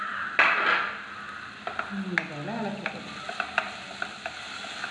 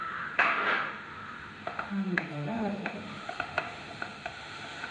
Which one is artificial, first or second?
second